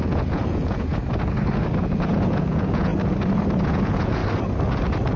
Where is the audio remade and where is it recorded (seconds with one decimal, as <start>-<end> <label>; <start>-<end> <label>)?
0.0-1.0 remade; 1.0-1.8 recorded; 1.8-2.9 remade; 2.9-3.6 recorded; 3.6-4.2 remade; 4.2-5.2 recorded